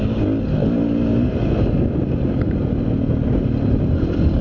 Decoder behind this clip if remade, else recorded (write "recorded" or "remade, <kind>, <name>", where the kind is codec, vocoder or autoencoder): recorded